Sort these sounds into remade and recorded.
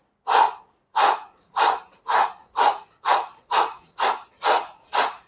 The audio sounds remade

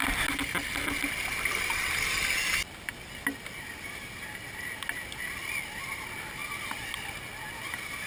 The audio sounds recorded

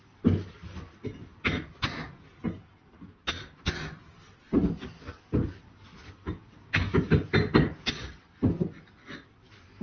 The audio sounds recorded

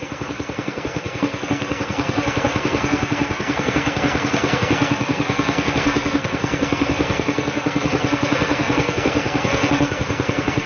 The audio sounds remade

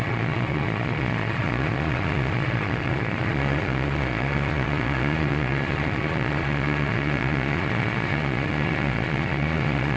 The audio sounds remade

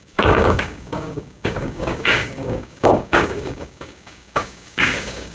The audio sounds remade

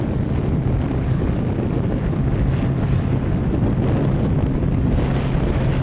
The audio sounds recorded